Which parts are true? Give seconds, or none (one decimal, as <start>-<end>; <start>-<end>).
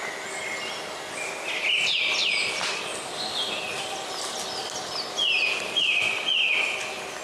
0.0-7.2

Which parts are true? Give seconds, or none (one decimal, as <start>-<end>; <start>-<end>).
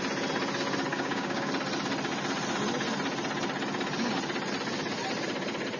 0.0-0.9; 1.5-5.8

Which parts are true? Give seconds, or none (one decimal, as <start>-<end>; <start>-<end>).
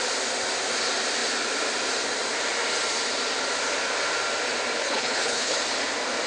0.0-4.8; 5.6-6.3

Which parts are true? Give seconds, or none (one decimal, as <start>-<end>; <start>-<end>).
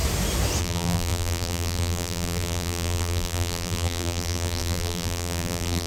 0.0-0.6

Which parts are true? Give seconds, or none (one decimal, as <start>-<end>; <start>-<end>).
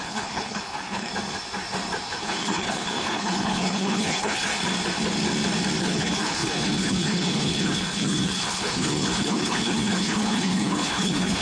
1.1-2.2; 4.5-5.8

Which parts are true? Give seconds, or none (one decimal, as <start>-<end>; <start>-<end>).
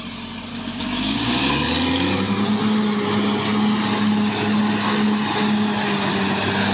0.0-0.5; 1.5-6.7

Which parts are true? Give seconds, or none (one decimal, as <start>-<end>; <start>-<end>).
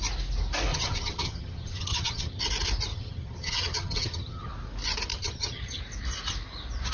0.0-0.7; 2.4-2.9; 4.5-5.1; 5.8-6.9